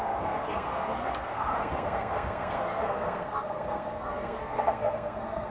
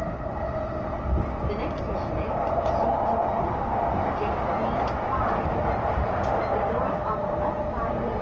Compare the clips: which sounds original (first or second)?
second